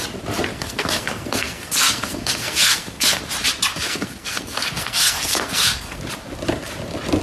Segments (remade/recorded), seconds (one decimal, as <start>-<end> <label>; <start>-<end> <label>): 0.0-0.5 recorded; 0.5-3.2 remade; 3.2-3.7 recorded; 3.7-6.0 remade; 6.0-7.2 recorded